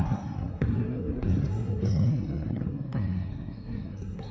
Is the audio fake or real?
fake